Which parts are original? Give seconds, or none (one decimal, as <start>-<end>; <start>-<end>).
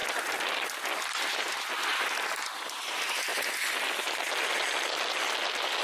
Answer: 0.0-5.8